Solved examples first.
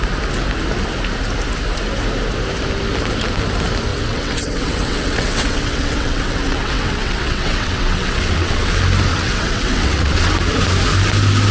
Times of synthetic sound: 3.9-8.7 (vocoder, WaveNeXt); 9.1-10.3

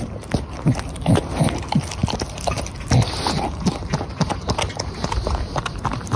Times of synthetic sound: none

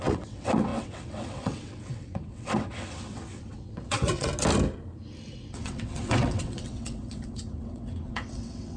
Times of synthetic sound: 0.0-4.3 (vocoder, WaveNeXt); 5.3-8.8

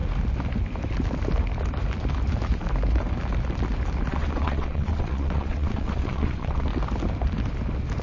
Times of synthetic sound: 4.1-6.7 (vocoder, WaveNeXt)

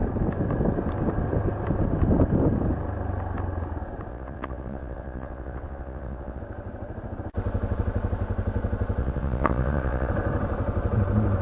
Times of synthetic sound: 4.1-6.4 (vocoder, WaveNeXt); 9.0-10.1

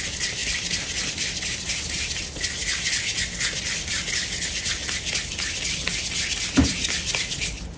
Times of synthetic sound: none

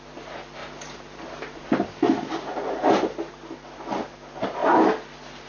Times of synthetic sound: none

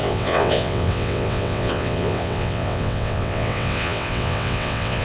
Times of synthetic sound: 0.0-5.0 (vocoder, WaveNeXt)